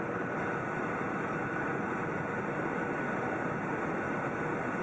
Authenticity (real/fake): real